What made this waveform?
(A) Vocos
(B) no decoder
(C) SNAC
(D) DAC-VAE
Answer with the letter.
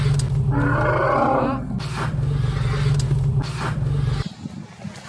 B